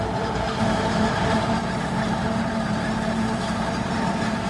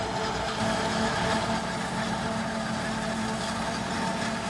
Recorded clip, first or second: second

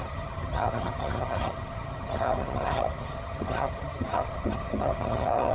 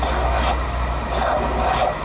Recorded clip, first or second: second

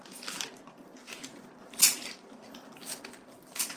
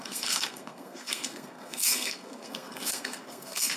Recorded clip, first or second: first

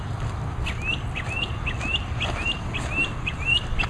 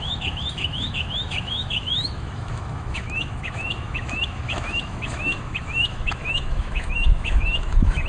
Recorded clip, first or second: first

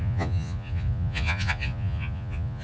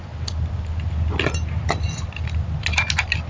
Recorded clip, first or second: second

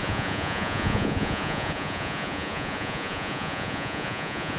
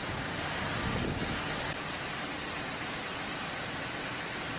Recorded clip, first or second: second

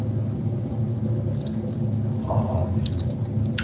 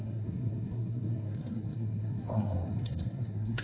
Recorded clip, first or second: first